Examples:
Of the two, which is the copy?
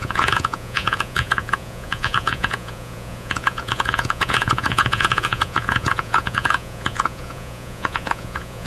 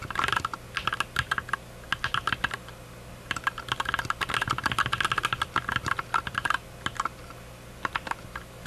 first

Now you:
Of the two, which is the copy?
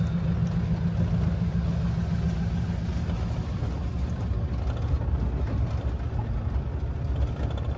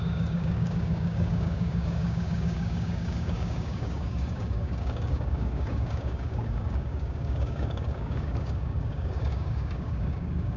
second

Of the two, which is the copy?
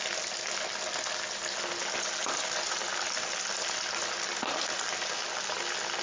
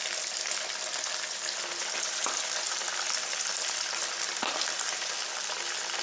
second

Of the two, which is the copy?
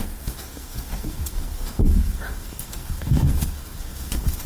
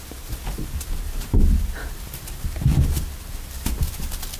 first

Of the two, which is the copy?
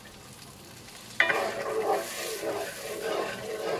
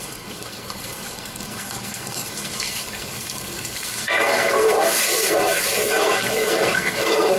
second